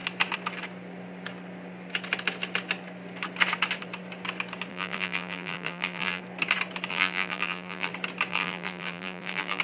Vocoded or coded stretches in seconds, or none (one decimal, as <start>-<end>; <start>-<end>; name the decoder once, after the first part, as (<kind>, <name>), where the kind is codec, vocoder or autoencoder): 4.7-6.2 (vocoder, BigVGAN v2); 6.9-7.9; 8.3-9.6